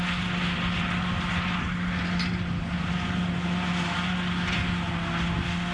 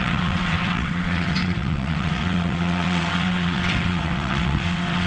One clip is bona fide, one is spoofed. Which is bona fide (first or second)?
first